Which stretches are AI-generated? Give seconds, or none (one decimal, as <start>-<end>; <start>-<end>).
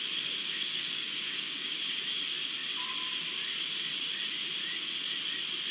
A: 0.4-1.8